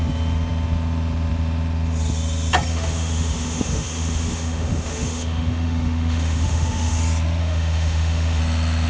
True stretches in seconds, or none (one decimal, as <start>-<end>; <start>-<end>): 0.0-2.7; 7.0-7.4; 8.4-8.9